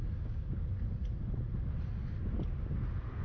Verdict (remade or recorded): recorded